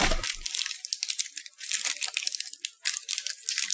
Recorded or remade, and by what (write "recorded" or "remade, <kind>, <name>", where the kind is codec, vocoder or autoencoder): recorded